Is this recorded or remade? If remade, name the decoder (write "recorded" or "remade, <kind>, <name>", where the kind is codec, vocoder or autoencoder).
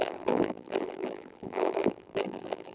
remade, vocoder, BigVGAN v2